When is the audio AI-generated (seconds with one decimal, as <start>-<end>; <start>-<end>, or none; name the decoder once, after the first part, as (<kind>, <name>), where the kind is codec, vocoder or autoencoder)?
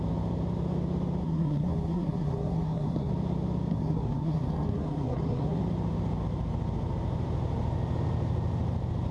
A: 1.2-3.1 (codec, SNAC); 3.7-5.6